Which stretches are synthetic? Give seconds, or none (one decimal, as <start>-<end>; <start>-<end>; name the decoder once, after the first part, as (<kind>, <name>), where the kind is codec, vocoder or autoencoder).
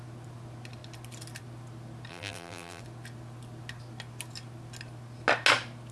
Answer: 2.1-2.8 (vocoder, BigVGAN v2)